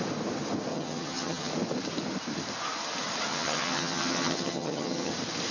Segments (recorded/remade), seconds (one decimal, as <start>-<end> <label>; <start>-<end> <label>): 0.0-0.7 recorded; 0.7-1.5 remade; 1.5-3.3 recorded; 3.3-5.1 remade; 5.1-5.5 recorded